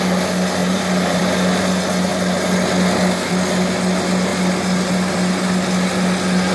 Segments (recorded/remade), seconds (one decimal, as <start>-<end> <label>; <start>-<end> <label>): 0.0-0.6 recorded; 0.6-1.2 remade; 1.2-6.5 recorded